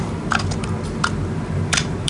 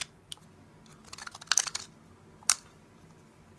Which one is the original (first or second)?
second